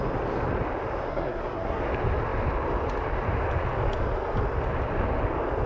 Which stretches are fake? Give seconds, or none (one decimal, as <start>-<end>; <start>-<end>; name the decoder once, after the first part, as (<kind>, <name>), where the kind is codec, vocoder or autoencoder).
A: 1.1-1.8 (codec, SNAC)